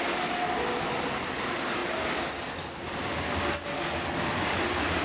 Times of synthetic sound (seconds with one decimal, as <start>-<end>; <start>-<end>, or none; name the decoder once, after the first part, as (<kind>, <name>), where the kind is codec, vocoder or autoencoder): none